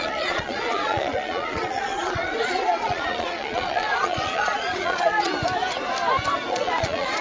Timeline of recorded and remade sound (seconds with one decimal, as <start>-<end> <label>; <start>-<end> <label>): 0.0-5.3 remade; 5.3-6.5 recorded; 6.5-7.2 remade